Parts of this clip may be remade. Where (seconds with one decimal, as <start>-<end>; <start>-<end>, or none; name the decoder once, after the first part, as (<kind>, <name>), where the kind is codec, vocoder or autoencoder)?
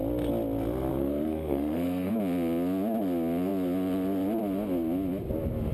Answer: 0.9-2.1 (codec, SNAC)